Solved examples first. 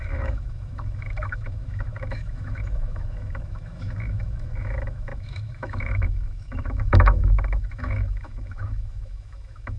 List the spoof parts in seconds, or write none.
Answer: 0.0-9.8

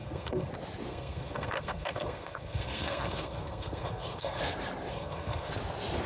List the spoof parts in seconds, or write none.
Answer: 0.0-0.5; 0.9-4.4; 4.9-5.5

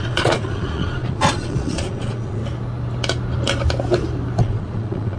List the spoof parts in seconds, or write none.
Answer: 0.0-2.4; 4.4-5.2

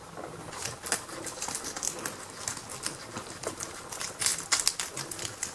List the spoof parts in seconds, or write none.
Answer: none

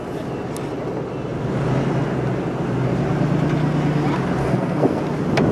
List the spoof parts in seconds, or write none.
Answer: 4.4-5.0